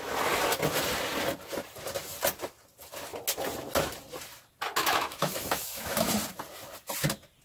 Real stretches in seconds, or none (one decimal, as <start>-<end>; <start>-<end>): 0.0-4.8; 6.1-7.4

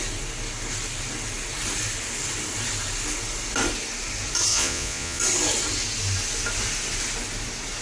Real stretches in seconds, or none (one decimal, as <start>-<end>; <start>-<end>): 0.0-4.5; 5.2-7.8